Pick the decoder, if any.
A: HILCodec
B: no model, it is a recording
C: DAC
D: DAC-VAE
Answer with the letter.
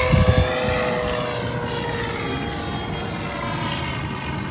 B